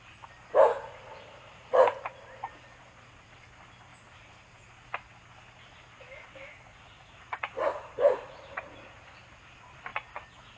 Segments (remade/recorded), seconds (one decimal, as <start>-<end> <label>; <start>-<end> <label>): 0.0-0.7 recorded; 0.7-1.9 remade; 1.9-6.7 recorded; 6.7-9.1 remade; 9.1-10.6 recorded